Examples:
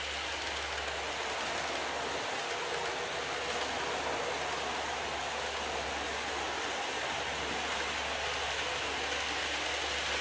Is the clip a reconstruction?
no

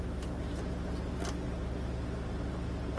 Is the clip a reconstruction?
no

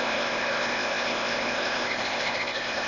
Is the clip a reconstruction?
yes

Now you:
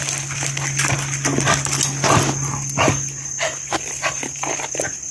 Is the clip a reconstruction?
no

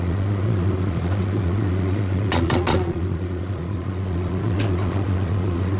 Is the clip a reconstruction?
yes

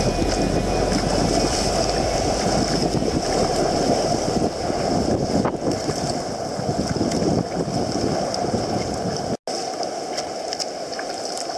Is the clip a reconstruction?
no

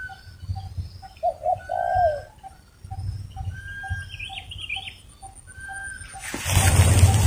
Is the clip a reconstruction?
no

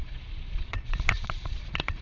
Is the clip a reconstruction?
yes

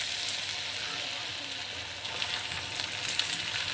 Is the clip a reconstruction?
no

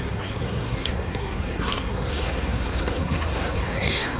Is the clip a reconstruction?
yes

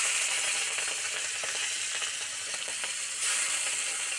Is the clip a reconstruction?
no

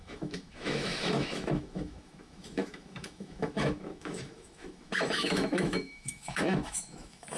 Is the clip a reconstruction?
yes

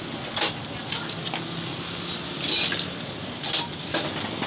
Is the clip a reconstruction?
no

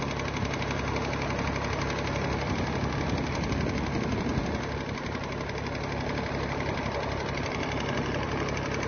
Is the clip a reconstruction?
no